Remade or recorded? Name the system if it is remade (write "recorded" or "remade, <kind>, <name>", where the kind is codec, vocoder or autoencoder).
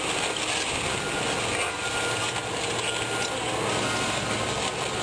recorded